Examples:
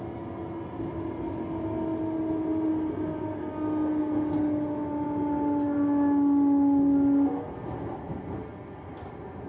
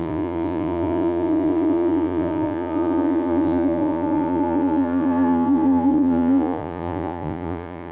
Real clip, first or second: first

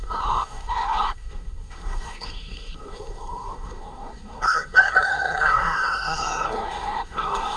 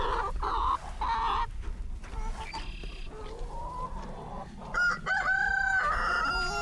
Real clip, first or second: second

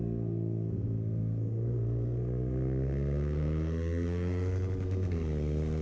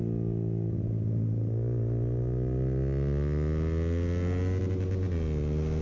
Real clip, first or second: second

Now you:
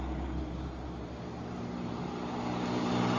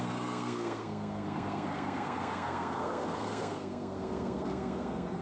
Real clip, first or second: first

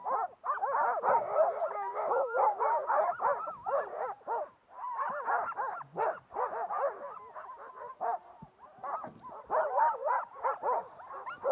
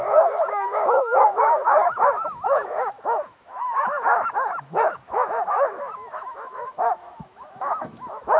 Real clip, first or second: first